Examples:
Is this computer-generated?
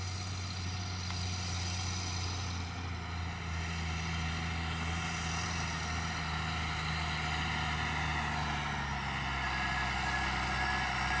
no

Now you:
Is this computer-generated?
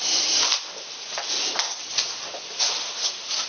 no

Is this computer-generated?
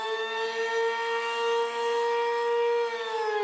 yes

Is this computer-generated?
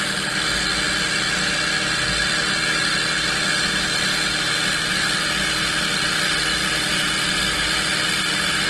no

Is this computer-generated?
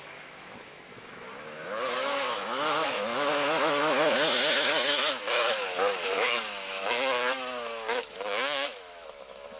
yes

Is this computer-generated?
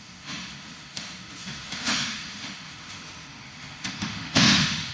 yes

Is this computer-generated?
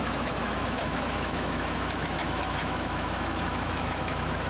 yes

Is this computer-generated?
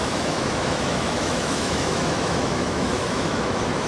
yes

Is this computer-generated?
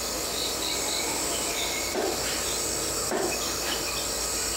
no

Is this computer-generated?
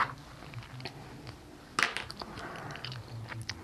no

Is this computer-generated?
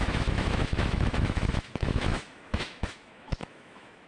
yes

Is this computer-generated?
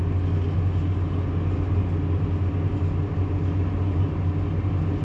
no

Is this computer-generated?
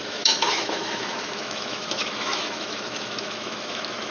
yes